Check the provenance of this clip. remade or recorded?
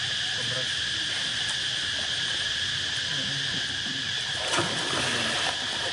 remade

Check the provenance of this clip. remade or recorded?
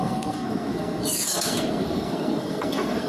remade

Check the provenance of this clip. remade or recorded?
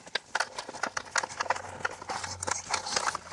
recorded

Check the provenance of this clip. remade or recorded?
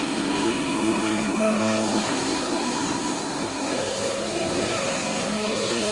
remade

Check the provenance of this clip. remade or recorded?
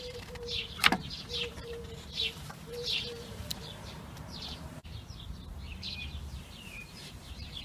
remade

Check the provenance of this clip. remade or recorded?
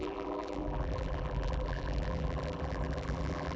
remade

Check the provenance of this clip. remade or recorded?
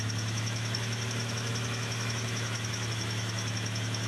remade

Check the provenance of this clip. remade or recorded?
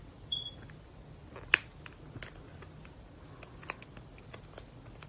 recorded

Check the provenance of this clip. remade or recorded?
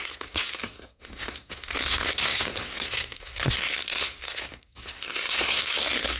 remade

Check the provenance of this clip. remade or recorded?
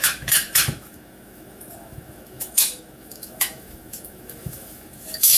remade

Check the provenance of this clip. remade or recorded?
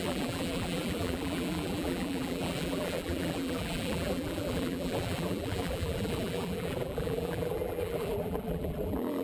remade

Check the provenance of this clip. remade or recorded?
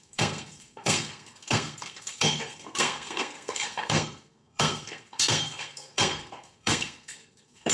remade